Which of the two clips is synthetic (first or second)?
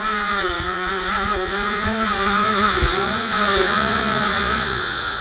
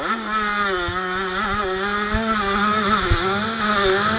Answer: first